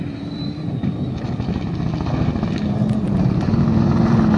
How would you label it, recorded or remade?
recorded